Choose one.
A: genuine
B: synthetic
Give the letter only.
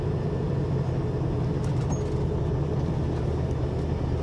A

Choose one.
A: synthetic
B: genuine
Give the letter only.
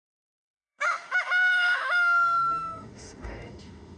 A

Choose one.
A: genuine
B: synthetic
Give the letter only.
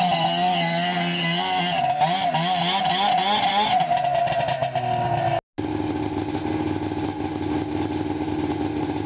A